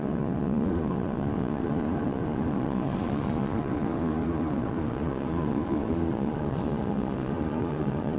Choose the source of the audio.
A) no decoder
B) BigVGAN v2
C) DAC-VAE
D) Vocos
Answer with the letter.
D